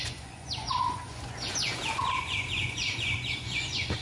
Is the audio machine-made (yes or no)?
yes